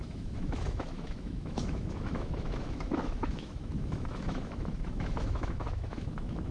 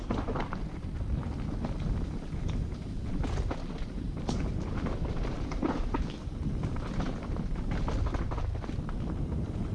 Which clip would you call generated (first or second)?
first